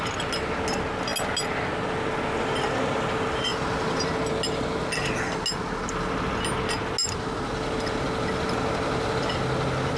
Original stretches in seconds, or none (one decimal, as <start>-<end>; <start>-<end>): 0.0-10.0

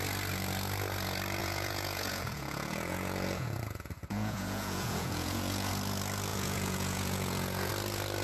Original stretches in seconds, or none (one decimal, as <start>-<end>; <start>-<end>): 0.0-1.4; 5.7-6.3; 7.7-8.2

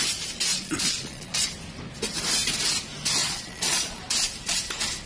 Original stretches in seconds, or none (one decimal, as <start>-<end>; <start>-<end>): 0.0-0.5; 1.5-3.2; 4.0-5.1

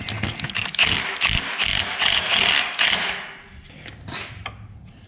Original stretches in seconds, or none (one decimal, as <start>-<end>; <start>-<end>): 0.0-5.1